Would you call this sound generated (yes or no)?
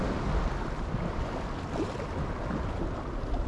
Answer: no